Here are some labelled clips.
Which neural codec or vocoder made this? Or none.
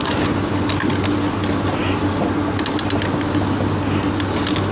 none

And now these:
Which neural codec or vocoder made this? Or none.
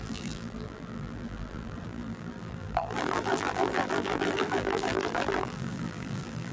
vocoder, BigVGAN v2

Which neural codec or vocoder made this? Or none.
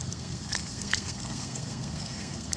codec, SNAC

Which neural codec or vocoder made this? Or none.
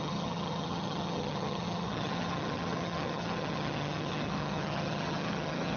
vocoder, HiFi-GAN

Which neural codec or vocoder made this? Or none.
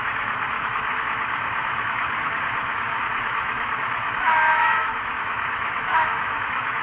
autoencoder, DAC-VAE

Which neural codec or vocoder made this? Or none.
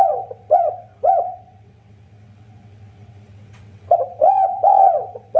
vocoder, WaveNeXt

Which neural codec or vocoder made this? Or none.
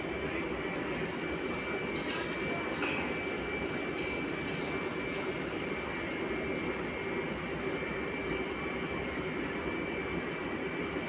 none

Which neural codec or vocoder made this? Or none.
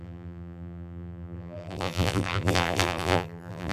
vocoder, BigVGAN v2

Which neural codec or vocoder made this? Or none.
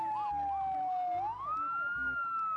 none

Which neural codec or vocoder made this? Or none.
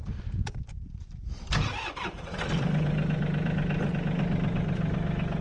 vocoder, BigVGAN v2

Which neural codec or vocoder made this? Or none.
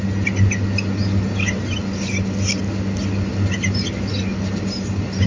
none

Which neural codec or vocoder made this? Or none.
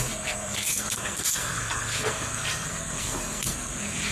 codec, SNAC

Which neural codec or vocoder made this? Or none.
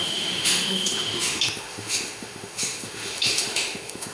autoencoder, DAC-VAE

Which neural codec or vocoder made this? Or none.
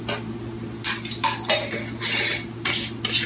none